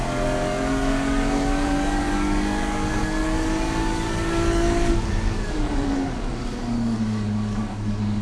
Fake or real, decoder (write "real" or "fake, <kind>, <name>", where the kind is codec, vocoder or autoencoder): fake, codec, DAC